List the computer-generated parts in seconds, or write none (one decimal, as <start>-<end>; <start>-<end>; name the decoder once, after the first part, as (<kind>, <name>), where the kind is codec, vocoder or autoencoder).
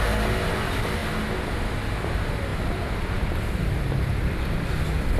none